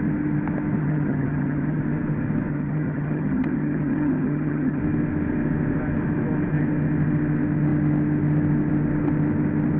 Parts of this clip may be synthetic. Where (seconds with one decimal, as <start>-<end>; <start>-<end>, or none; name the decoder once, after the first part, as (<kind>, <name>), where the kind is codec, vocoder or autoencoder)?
0.8-1.8 (vocoder, HiFi-GAN); 2.5-4.8